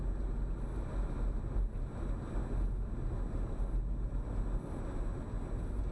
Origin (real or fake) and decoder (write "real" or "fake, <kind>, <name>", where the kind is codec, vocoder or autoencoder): real